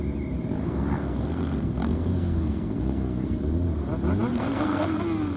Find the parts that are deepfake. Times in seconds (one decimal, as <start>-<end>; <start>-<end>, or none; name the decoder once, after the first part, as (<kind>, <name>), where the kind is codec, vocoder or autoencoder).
0.6-3.4 (codec, SNAC); 4.3-5.0